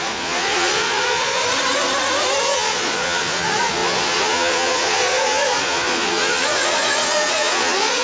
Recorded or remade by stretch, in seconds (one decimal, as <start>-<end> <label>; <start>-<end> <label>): 0.0-1.4 remade; 1.4-2.4 recorded; 2.4-8.0 remade